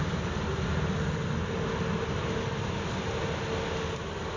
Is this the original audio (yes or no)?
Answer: yes